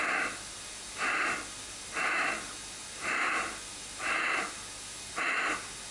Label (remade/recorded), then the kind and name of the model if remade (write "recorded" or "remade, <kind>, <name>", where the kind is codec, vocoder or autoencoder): recorded